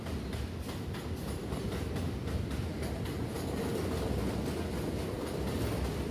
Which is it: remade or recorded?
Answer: recorded